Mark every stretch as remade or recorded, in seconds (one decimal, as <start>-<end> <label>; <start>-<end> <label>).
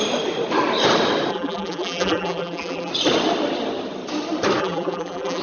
0.0-1.3 recorded; 1.3-2.9 remade; 2.9-4.6 recorded; 4.6-5.4 remade